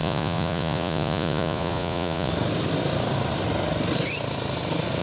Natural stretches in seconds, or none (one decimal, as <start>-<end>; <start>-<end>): 2.3-5.0